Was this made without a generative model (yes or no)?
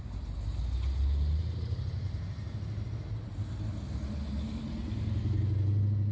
yes